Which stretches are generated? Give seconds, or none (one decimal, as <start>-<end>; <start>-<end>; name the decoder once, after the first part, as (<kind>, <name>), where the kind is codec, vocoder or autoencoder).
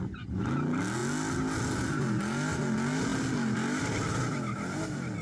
none